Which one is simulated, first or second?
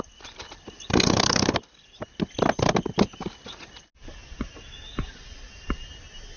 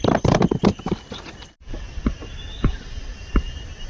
second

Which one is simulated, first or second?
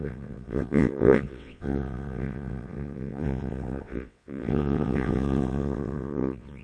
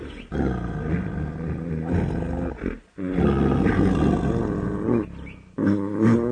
first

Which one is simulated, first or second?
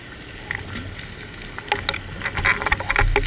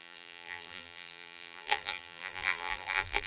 second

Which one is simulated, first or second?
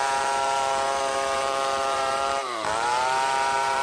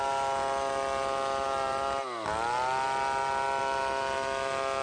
first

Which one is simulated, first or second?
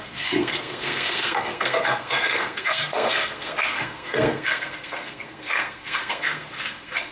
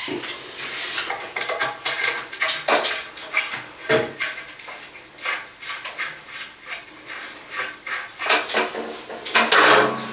first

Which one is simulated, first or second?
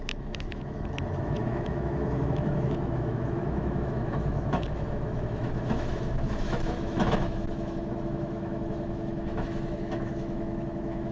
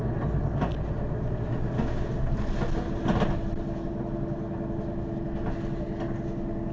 first